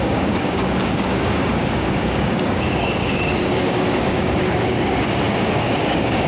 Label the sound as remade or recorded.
remade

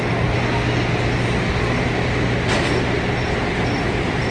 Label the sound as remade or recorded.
recorded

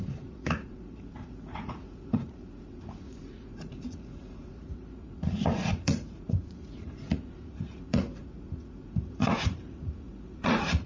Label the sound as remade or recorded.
remade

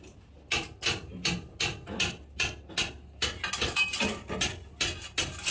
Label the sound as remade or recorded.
recorded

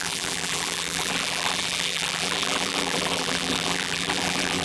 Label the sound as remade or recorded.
remade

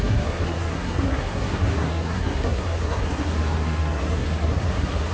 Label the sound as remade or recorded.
remade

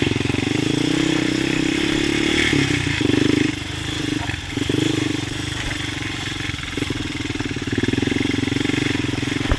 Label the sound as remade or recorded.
remade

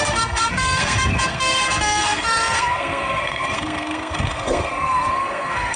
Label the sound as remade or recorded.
remade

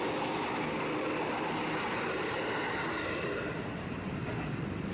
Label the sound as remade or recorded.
recorded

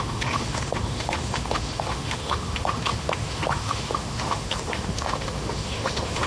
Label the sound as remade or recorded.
remade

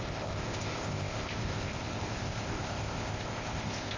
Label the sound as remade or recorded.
remade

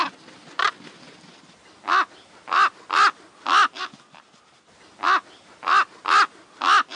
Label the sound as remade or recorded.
recorded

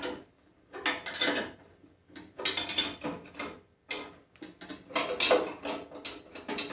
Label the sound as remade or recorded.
recorded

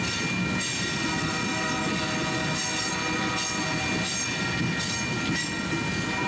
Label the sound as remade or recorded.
recorded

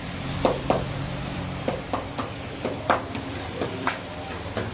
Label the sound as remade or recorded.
remade